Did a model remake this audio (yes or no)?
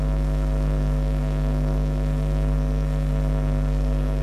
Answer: yes